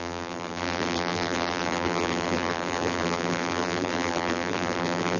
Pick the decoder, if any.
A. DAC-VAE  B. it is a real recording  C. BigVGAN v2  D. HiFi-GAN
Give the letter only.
C